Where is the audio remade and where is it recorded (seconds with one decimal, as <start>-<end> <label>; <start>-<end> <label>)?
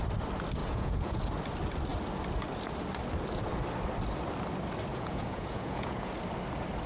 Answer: 0.0-0.6 recorded; 0.6-1.3 remade; 1.3-4.9 recorded; 4.9-6.1 remade; 6.1-6.9 recorded